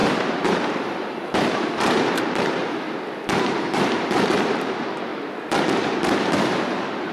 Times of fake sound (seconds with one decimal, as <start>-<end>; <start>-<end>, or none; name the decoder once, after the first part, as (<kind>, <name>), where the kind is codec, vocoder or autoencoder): 0.0-2.6 (vocoder, BigVGAN v2); 3.4-5.1; 5.7-7.1

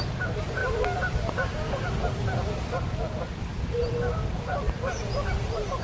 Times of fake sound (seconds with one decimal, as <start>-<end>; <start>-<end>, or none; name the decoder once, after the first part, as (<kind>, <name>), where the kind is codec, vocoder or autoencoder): 0.0-0.6 (vocoder, BigVGAN v2); 3.6-5.8